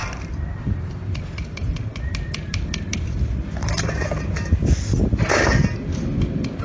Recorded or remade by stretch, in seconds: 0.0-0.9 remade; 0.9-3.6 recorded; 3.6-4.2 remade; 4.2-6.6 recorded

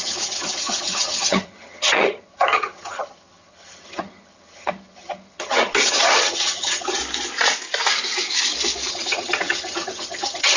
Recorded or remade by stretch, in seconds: 0.0-7.0 remade; 7.0-8.9 recorded; 8.9-10.6 remade

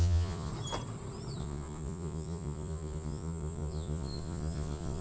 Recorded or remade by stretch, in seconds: 0.0-0.5 remade; 0.5-1.4 recorded; 1.4-5.0 remade

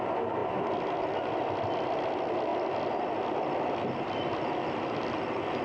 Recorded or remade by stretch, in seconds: 0.0-5.6 recorded

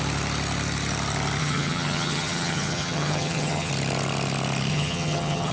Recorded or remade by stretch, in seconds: 0.0-1.4 recorded; 1.4-3.7 remade; 3.7-4.7 recorded; 4.7-5.5 remade

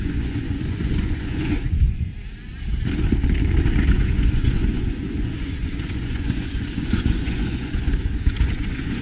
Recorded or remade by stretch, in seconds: 0.0-2.1 remade; 2.1-3.9 recorded; 3.9-9.0 remade